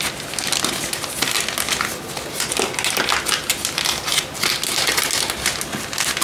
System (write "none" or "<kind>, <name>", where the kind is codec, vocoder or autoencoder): none